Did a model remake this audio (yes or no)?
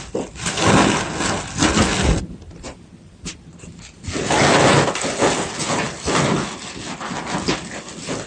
no